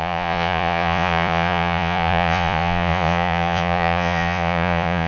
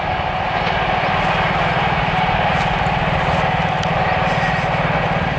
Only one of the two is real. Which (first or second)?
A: second